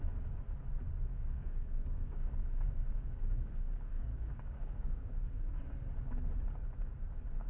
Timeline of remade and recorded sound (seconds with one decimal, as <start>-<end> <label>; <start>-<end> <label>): 0.0-1.1 recorded; 1.1-5.6 remade; 5.6-7.5 recorded